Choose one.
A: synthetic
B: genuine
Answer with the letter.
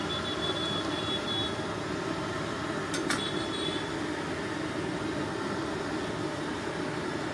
B